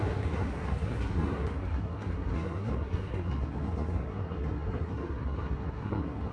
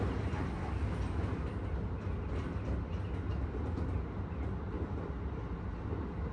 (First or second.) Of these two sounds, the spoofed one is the first